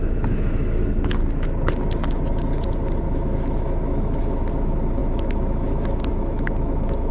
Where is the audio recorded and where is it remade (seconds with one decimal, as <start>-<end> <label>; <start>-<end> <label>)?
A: 0.0-1.2 remade; 1.2-2.7 recorded; 2.7-7.1 remade